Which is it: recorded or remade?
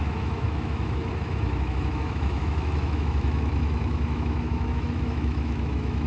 remade